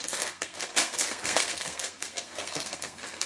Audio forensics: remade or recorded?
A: remade